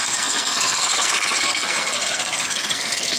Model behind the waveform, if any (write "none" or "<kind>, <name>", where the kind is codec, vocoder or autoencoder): codec, SNAC